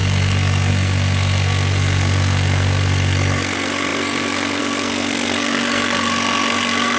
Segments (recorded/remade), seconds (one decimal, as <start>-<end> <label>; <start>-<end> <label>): 0.0-7.0 remade